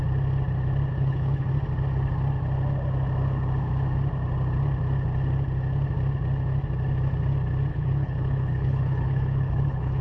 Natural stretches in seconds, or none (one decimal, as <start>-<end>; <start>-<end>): 0.0-0.9; 1.5-7.7